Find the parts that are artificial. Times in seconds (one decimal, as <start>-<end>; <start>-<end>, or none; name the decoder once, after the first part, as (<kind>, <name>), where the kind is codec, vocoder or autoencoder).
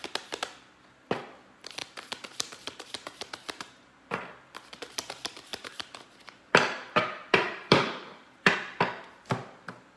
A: 1.8-4.2 (vocoder, BigVGAN v2); 5.5-8.5